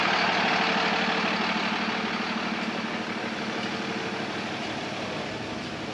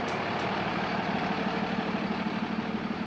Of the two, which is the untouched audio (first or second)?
first